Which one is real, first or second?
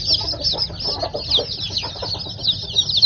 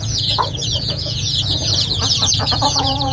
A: first